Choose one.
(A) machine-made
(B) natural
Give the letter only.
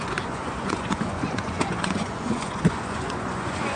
A